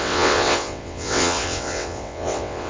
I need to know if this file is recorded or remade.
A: remade